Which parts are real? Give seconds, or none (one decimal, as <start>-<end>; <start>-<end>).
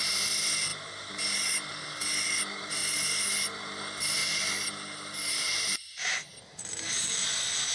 0.0-7.7